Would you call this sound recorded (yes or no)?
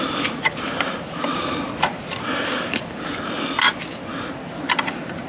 yes